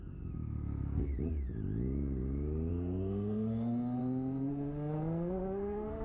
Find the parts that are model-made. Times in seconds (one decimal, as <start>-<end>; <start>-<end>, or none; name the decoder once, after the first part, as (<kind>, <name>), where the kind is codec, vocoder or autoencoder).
0.0-1.1 (codec, SNAC); 2.7-4.0; 4.5-6.0